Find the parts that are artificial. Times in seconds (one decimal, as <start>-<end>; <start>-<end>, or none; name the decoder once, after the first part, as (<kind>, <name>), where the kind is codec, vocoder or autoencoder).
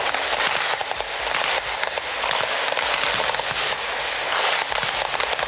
none